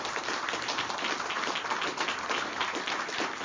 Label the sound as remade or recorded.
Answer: recorded